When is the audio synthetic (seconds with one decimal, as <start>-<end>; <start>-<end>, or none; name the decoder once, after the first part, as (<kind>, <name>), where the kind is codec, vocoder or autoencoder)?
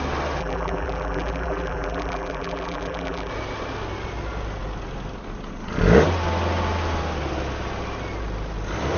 0.4-3.3 (vocoder, BigVGAN v2)